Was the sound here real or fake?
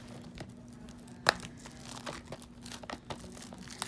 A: real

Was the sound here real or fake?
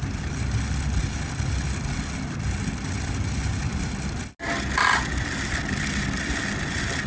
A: real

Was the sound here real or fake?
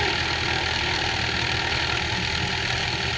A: real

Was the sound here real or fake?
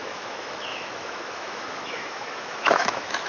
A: fake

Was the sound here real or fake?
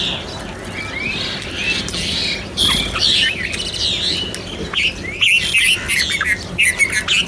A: real